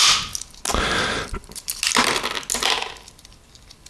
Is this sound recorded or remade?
recorded